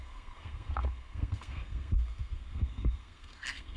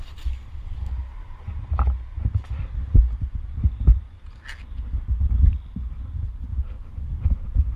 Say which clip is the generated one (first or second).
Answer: first